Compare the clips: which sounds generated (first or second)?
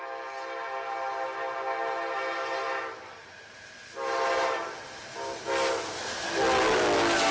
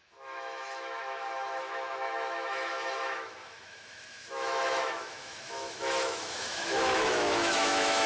second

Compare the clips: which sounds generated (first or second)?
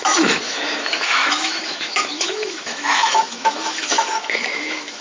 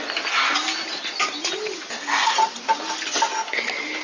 first